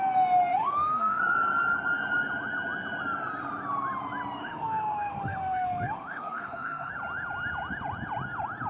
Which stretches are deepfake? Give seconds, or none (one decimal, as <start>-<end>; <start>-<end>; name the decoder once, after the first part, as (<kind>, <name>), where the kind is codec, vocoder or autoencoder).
0.5-1.2 (autoencoder, DAC-VAE); 4.4-6.9